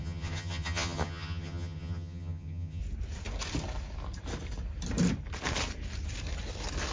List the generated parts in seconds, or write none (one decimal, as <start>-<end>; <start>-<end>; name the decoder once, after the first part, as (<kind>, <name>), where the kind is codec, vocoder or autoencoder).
0.0-2.8 (vocoder, HiFi-GAN)